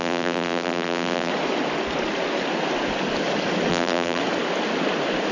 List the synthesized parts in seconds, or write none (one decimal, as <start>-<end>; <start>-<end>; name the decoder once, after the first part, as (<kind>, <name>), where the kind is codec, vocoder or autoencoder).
0.0-1.3 (vocoder, BigVGAN v2); 3.7-4.2

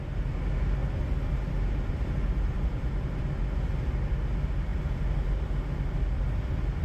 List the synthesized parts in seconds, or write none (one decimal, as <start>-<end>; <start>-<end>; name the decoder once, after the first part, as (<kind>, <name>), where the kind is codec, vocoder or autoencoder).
none

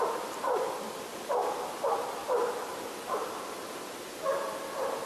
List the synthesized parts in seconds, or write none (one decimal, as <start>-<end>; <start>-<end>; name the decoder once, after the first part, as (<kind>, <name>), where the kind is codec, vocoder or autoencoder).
none

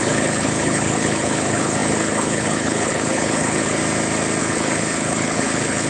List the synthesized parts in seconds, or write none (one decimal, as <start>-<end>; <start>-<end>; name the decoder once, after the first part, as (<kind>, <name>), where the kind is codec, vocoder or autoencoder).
0.0-3.8 (codec, HILCodec); 4.4-5.9

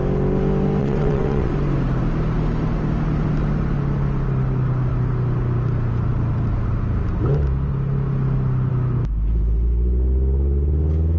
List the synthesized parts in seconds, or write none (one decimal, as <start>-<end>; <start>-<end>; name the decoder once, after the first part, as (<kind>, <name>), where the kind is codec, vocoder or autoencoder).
0.8-1.5 (vocoder, WaveNeXt)

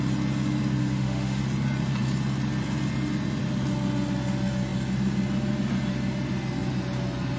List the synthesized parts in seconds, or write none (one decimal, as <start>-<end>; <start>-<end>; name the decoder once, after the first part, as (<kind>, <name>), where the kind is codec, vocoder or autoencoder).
0.8-1.4 (autoencoder, DAC-VAE)